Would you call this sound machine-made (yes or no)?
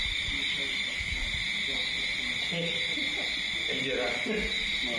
no